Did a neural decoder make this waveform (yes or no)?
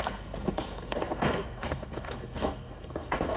yes